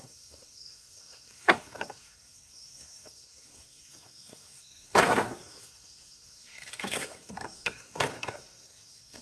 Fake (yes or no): yes